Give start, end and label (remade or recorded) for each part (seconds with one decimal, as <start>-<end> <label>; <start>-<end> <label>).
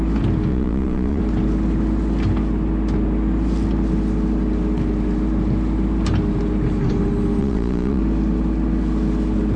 0.0-0.5 recorded; 0.5-1.2 remade; 1.2-7.4 recorded; 7.4-8.0 remade; 8.0-9.6 recorded